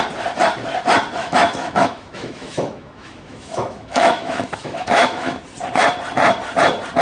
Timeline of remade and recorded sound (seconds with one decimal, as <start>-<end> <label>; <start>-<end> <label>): 0.0-1.2 recorded; 1.2-5.4 remade; 5.4-7.0 recorded